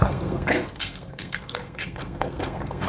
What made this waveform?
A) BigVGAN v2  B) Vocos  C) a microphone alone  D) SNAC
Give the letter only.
D